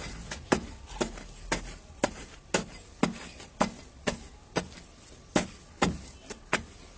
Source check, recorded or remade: recorded